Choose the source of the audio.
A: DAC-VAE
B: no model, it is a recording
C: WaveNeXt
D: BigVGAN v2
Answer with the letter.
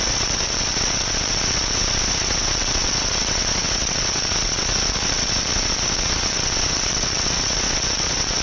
C